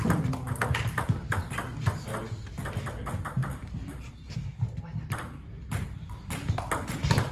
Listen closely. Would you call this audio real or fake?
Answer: real